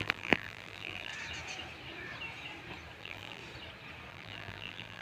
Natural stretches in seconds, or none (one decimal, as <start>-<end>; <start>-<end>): 1.1-3.0; 3.4-4.1

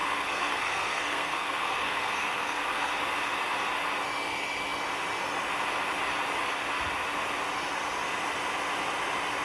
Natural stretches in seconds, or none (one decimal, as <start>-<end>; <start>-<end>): 2.9-9.4

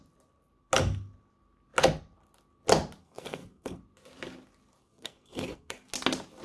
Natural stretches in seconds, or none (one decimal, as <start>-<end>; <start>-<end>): 0.0-3.0; 3.8-4.8; 5.9-6.4